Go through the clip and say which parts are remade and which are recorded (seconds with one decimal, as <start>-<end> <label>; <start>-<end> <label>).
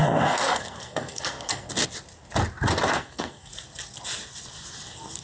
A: 0.0-1.7 remade; 1.7-2.9 recorded; 2.9-3.5 remade; 3.5-5.2 recorded